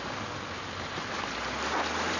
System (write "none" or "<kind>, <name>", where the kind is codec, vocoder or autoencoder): none